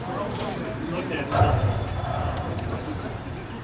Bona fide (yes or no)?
no